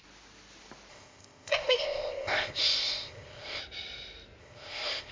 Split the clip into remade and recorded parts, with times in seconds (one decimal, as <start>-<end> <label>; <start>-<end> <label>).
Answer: 0.0-0.9 recorded; 0.9-3.6 remade; 3.6-4.4 recorded; 4.4-5.1 remade